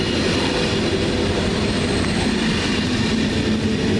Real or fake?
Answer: real